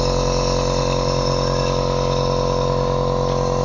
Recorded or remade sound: recorded